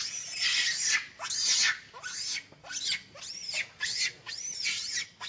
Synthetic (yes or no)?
no